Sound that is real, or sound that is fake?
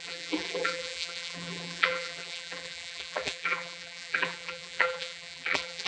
fake